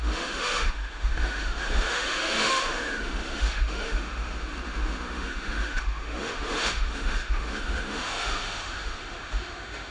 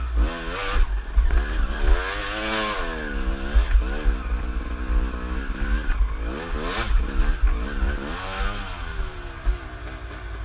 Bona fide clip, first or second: second